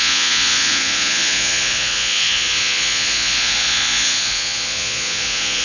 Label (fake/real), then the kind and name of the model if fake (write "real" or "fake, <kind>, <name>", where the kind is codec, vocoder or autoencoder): fake, vocoder, Vocos